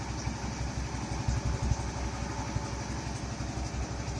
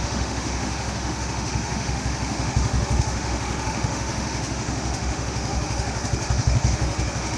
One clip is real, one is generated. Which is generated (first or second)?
second